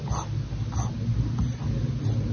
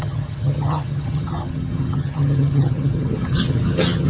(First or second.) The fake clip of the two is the second